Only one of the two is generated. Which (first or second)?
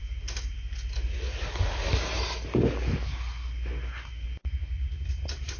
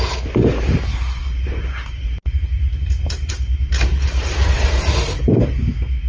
second